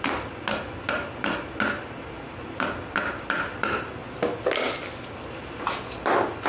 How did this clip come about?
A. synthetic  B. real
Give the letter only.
B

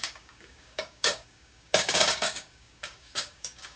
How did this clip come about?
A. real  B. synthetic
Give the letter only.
B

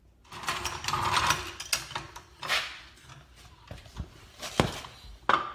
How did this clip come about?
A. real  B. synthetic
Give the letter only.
A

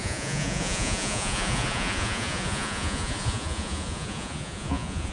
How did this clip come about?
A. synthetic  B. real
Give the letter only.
A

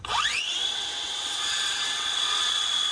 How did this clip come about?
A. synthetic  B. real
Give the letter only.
A